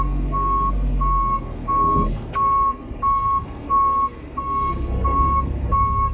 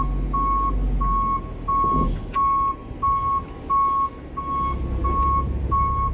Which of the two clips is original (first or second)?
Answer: second